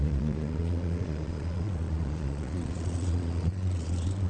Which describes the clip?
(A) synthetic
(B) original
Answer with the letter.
A